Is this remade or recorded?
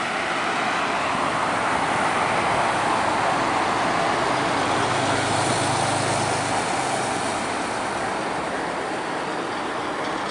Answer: recorded